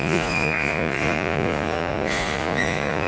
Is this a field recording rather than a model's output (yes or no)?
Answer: no